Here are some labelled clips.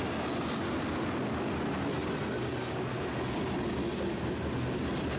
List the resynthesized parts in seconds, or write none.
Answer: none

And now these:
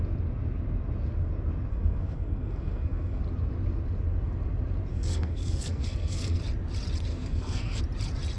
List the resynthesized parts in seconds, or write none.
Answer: 1.7-3.2 (codec, SNAC); 4.9-6.4; 7.1-7.8